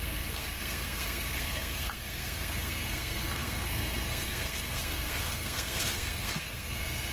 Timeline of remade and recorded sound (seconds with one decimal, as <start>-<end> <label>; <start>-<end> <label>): 0.0-7.1 remade